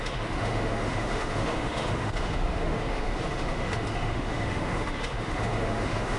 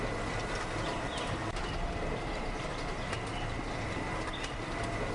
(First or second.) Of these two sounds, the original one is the second